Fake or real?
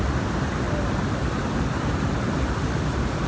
real